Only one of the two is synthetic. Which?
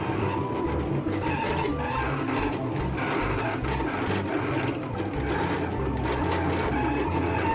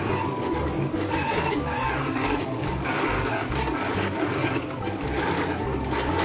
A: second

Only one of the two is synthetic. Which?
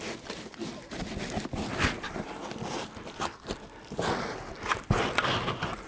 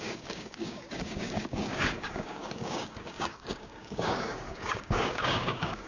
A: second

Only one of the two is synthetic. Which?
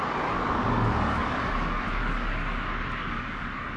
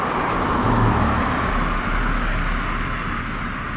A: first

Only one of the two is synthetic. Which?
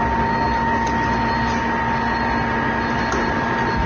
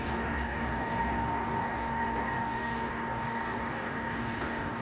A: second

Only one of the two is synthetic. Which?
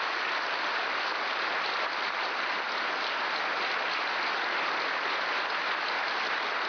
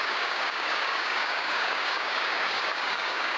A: second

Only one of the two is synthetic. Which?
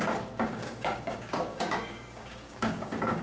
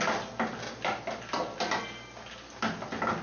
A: first